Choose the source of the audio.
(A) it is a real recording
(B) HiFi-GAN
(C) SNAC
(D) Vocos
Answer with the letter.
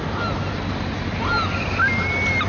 A